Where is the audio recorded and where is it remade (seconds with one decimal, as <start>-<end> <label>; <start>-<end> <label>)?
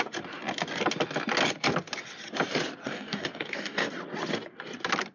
0.0-2.8 recorded; 2.8-3.9 remade; 3.9-5.1 recorded